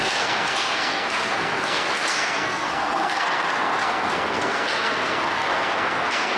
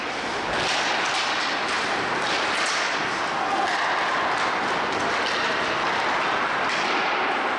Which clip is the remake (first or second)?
first